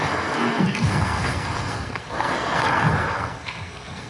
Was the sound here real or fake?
fake